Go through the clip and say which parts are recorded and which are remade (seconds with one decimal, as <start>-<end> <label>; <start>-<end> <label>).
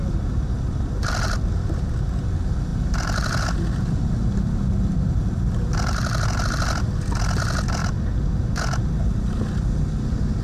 0.0-10.4 recorded